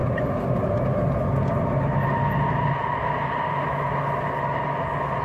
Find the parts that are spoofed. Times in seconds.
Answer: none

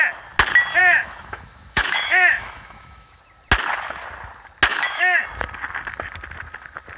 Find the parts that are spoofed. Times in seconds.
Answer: 0.8-3.2 (autoencoder, DAC-VAE); 4.7-5.2

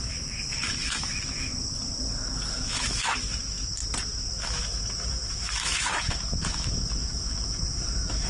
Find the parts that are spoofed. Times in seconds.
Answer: 0.0-1.5 (autoencoder, DAC-VAE); 2.7-3.8; 4.3-8.3

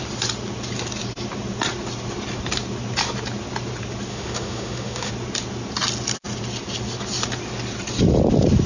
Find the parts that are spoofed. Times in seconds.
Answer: 4.1-5.1 (autoencoder, DAC-VAE)

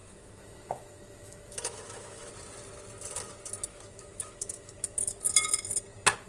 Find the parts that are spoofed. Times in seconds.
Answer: 0.0-2.3 (autoencoder, DAC-VAE); 3.7-5.2

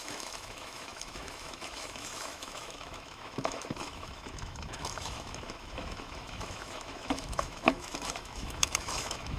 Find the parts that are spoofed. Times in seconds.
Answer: 0.0-9.4 (autoencoder, DAC-VAE)

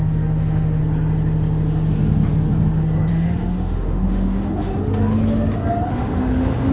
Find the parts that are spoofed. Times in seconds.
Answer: 0.0-0.8 (autoencoder, DAC-VAE); 3.1-4.7; 5.9-6.7

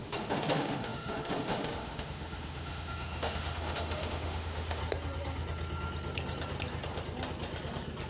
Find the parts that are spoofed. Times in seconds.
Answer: 0.0-4.8 (autoencoder, DAC-VAE)